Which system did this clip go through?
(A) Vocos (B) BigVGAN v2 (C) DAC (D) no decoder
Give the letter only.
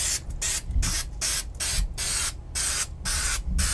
D